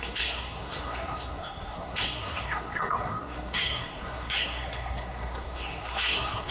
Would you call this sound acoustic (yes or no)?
no